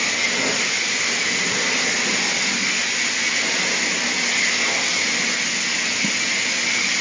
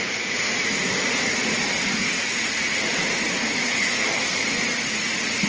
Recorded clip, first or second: first